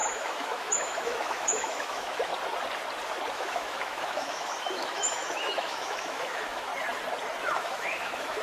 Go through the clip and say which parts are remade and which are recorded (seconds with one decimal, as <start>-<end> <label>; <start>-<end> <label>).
0.0-2.3 remade; 2.3-3.3 recorded; 3.3-6.7 remade; 6.7-7.4 recorded; 7.4-8.4 remade